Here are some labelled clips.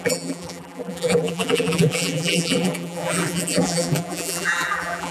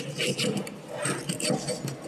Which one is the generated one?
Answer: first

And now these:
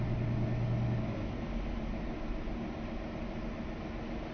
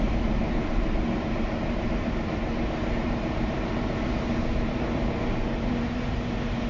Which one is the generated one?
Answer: second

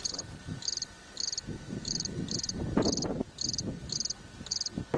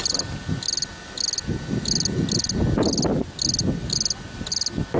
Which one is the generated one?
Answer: first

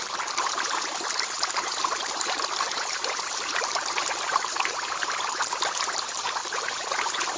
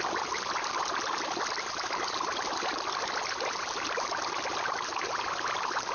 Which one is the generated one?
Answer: first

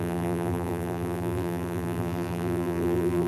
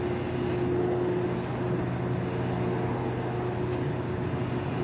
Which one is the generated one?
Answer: first